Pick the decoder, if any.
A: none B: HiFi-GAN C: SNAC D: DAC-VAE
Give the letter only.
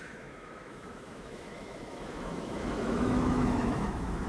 D